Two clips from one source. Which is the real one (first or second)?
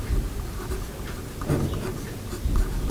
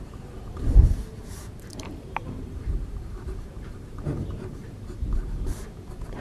first